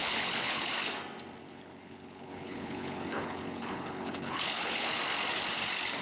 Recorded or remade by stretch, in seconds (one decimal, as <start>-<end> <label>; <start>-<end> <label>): 0.0-0.7 remade; 0.7-1.4 recorded; 1.4-5.0 remade; 5.0-6.0 recorded